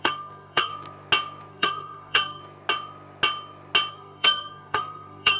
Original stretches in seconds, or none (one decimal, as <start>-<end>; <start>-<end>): 0.7-1.5; 2.4-3.9